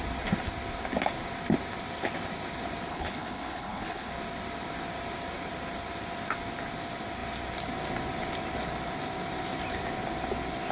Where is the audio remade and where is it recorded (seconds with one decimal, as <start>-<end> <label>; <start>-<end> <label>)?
0.0-2.9 recorded; 2.9-4.1 remade; 4.1-10.7 recorded